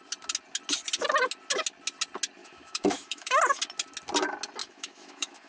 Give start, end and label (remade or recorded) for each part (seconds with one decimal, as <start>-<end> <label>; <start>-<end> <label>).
0.0-2.4 recorded; 2.4-3.4 remade; 3.4-4.6 recorded; 4.6-5.5 remade